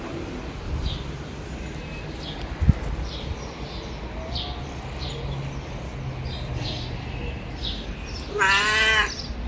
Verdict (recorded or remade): recorded